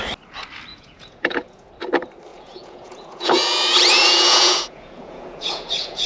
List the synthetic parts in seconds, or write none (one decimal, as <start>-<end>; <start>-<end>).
0.7-1.7; 2.3-6.1